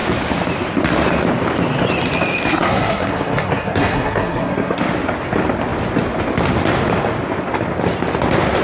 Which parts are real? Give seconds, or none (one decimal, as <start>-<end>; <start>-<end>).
0.0-2.5; 4.8-8.6